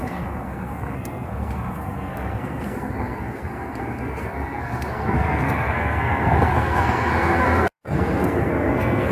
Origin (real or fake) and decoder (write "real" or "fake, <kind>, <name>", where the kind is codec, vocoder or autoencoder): fake, codec, SNAC